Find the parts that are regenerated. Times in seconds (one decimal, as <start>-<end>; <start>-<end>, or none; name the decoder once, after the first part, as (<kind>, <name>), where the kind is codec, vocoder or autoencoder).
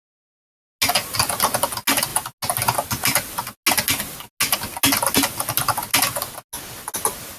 none